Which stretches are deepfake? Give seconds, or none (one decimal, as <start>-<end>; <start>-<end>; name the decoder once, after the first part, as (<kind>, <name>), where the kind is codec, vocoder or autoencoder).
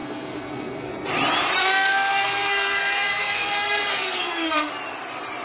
0.0-0.9 (codec, SNAC); 1.6-4.7